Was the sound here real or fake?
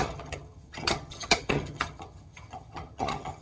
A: fake